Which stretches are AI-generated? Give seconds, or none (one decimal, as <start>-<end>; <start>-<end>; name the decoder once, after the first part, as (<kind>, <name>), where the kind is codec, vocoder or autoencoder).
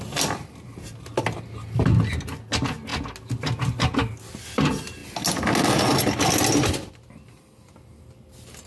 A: none